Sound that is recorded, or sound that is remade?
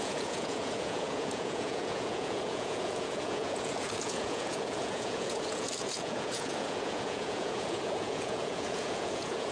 remade